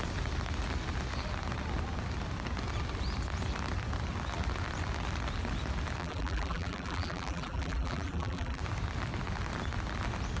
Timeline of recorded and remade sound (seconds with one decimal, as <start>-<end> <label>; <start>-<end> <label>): 0.0-6.0 recorded; 6.0-8.6 remade; 8.6-10.4 recorded